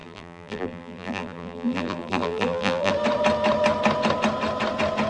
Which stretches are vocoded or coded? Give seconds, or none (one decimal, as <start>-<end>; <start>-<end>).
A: 0.0-2.9